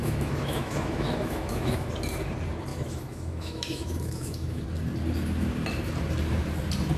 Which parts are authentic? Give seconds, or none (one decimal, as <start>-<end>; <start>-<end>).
1.9-2.7; 4.6-7.0